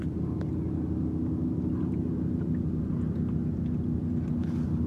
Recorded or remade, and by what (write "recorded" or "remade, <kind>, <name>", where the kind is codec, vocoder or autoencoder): recorded